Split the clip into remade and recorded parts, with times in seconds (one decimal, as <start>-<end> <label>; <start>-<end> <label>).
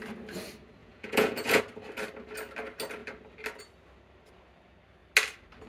0.0-0.8 recorded; 0.8-1.6 remade; 1.6-5.7 recorded